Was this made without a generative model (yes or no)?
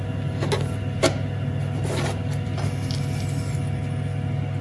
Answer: yes